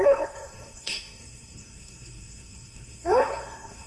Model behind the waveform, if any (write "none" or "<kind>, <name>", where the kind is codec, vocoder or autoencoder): codec, SNAC